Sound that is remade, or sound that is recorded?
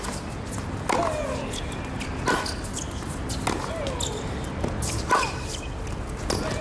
recorded